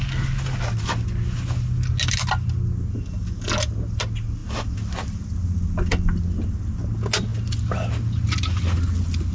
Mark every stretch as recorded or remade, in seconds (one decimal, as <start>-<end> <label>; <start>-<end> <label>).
0.0-9.3 recorded